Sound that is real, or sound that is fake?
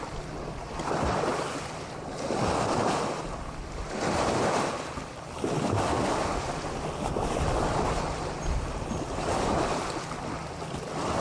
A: real